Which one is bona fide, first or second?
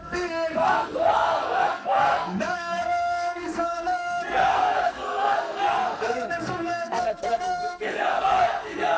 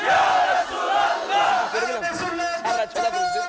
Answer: second